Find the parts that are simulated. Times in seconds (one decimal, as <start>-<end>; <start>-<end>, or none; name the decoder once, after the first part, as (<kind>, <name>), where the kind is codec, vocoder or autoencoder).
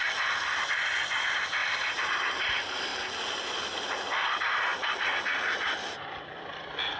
1.6-2.4 (vocoder, BigVGAN v2)